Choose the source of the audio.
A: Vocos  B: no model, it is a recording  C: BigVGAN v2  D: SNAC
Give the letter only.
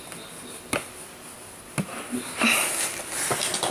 B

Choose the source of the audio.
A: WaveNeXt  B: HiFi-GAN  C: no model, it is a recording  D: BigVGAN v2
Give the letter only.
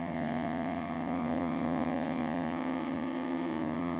B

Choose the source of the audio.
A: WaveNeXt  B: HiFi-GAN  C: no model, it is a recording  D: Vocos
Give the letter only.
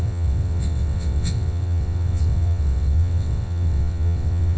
A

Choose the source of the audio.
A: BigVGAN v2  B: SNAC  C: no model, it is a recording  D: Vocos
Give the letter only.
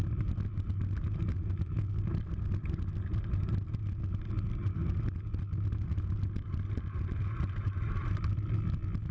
C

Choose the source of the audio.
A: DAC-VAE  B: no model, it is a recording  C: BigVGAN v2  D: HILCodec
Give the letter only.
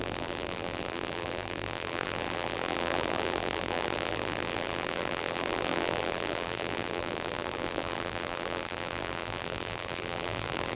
C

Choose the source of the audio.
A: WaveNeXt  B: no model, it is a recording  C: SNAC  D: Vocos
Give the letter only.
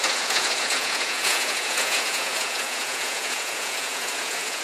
D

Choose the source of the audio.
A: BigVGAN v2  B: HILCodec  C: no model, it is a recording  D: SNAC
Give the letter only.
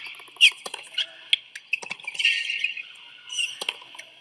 C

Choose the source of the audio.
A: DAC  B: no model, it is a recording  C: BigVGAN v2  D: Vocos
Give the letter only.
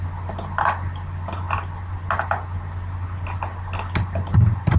B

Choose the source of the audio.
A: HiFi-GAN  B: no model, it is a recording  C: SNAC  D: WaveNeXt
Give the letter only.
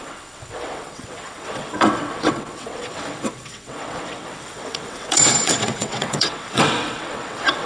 D